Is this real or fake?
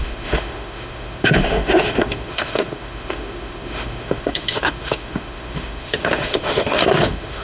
fake